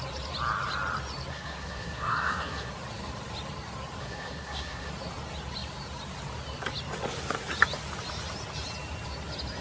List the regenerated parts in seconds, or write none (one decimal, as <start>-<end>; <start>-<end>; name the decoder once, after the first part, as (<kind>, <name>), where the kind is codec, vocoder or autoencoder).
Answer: 1.3-2.7 (codec, SNAC); 4.0-4.9